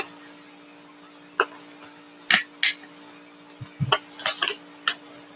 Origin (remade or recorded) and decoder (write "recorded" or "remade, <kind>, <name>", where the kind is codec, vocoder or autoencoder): recorded